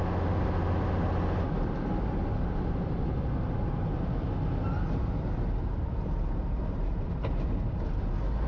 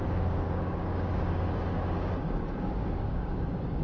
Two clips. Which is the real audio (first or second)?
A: first